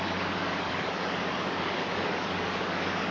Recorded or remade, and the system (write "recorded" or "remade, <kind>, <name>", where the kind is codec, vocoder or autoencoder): remade, codec, DAC